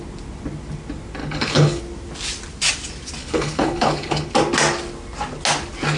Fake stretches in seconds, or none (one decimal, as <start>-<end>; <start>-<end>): 1.2-1.8; 3.2-4.3

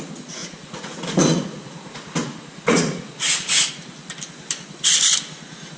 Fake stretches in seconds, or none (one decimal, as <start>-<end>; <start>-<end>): 0.4-3.7

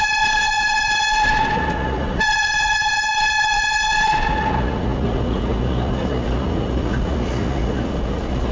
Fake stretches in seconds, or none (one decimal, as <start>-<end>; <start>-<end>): 0.0-8.5

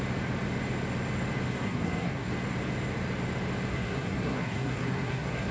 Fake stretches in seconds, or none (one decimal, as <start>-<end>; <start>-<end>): 1.5-2.3; 3.7-5.5

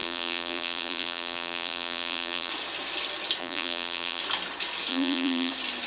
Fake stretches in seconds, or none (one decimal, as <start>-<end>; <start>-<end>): 0.0-2.5; 3.4-4.2; 4.9-5.5

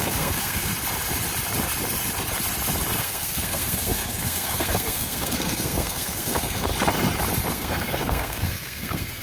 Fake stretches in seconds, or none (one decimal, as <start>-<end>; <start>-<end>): 0.0-0.7; 3.0-6.7; 7.5-9.2

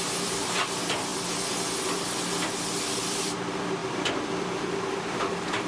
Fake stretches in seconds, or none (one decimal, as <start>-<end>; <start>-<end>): 0.0-1.1; 3.0-5.7